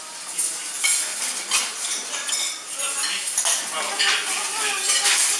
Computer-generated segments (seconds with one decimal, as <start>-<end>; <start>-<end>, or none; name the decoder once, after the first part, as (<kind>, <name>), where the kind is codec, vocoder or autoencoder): none